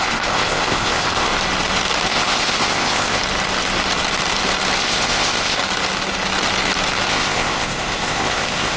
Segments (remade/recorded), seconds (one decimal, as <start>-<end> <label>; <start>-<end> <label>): 0.0-1.3 remade; 1.3-2.1 recorded; 2.1-3.2 remade; 3.2-4.8 recorded; 4.8-5.6 remade; 5.6-7.1 recorded; 7.1-8.8 remade